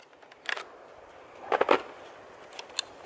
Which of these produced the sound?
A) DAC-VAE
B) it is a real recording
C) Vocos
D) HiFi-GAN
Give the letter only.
B